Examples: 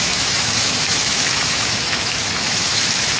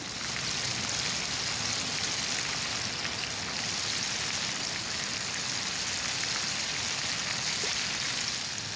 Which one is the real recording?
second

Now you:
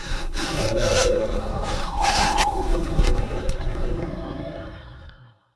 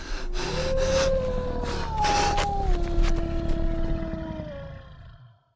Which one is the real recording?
second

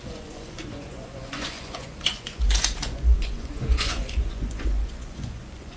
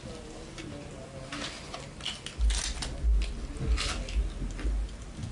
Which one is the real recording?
second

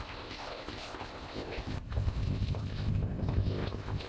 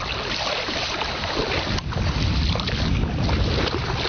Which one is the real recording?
second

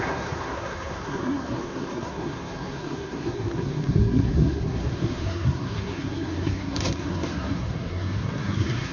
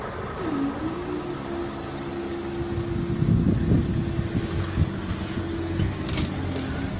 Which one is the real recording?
second